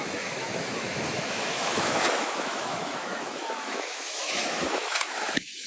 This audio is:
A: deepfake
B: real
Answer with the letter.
A